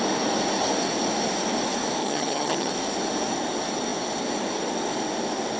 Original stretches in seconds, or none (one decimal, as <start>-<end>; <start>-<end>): 0.0-2.0; 2.7-5.6